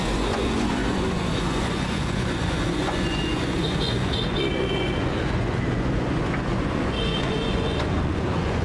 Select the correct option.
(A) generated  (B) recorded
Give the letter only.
A